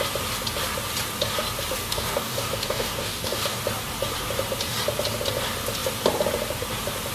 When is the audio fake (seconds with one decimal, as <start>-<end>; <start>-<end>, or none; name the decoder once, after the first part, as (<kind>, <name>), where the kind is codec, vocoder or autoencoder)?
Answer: 1.8-3.6 (codec, DAC)